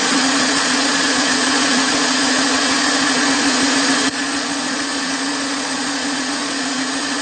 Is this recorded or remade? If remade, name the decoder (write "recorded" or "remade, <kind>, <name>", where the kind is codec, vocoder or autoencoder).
remade, vocoder, Vocos